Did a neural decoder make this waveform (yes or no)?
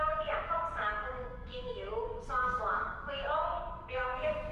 yes